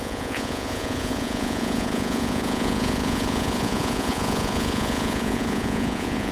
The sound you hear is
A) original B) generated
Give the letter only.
B